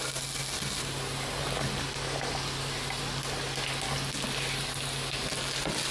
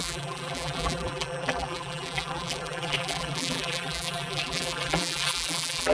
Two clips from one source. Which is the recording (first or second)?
first